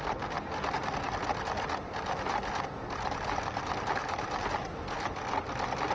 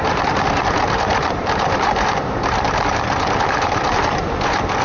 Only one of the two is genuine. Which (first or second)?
first